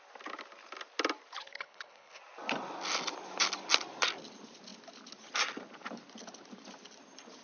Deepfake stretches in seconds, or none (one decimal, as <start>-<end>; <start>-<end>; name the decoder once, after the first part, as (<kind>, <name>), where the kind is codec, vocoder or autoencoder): 1.4-2.2 (codec, HILCodec)